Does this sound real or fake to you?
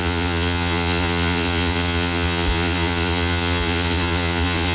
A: fake